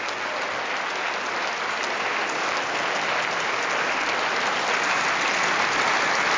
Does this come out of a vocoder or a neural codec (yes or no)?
no